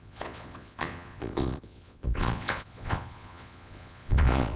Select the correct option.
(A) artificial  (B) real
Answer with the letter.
A